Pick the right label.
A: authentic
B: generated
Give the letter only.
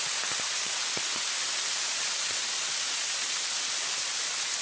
A